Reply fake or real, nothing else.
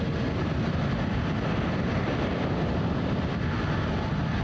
fake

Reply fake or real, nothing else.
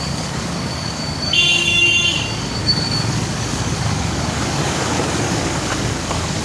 fake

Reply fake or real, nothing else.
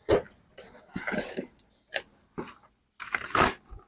real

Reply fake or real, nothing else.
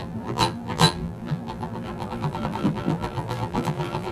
fake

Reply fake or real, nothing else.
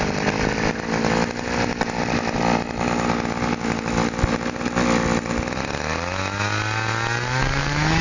real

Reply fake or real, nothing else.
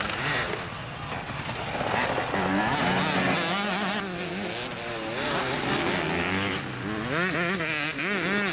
real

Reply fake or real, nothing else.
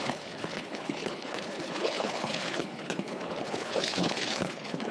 fake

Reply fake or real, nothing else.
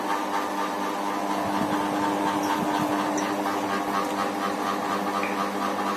real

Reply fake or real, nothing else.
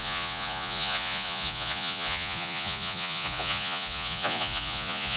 fake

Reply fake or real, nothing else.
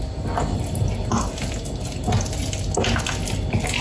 real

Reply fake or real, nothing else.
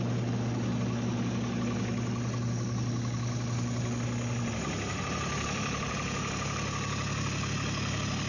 real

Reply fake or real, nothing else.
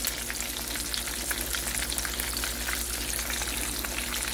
real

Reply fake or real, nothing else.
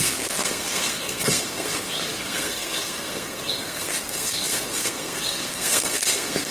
fake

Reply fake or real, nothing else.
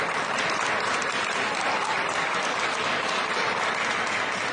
real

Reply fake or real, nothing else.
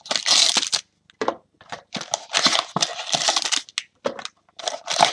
real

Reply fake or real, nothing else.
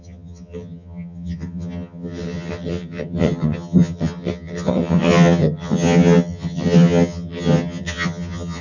fake